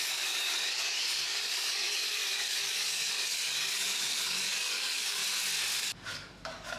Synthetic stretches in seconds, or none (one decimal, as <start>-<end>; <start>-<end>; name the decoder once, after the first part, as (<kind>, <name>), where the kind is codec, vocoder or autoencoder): 0.0-5.2 (codec, DAC); 5.8-6.8